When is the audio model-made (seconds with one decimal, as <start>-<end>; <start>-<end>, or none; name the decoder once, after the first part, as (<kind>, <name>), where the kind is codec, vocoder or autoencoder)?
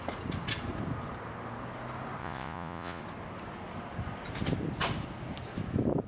2.2-3.0 (vocoder, Vocos)